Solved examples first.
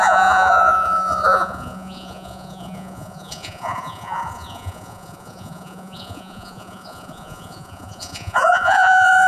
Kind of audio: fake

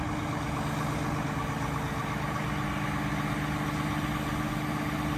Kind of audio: real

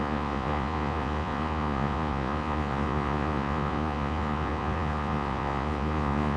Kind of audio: fake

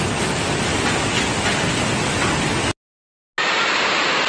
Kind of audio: real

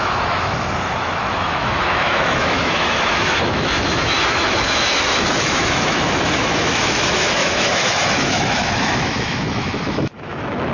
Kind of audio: fake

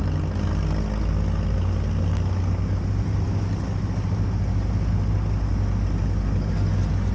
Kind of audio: real